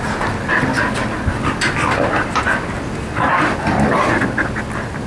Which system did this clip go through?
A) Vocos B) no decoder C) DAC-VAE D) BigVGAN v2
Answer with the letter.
B